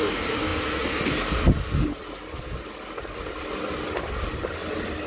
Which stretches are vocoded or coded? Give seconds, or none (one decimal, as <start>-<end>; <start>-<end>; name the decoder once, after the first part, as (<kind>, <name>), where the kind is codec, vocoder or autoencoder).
none